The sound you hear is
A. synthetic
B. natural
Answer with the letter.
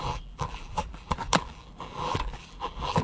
A